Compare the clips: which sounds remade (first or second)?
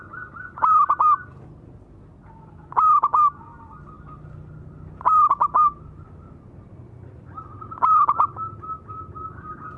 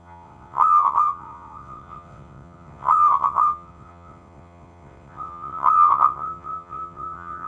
second